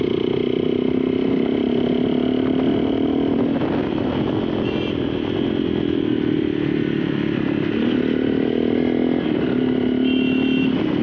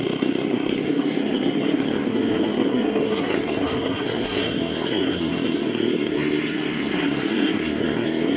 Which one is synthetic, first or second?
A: second